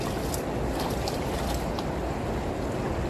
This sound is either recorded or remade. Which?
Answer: recorded